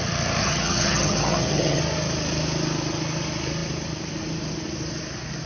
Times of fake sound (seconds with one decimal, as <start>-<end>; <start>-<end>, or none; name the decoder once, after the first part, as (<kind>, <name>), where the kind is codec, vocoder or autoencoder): 0.4-1.8 (vocoder, HiFi-GAN)